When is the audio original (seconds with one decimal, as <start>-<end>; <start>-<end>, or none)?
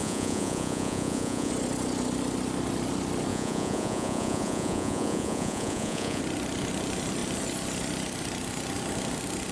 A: 1.5-3.3; 6.2-9.5